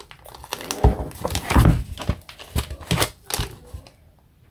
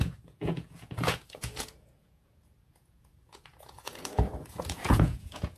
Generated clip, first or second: second